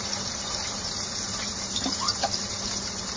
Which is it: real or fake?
fake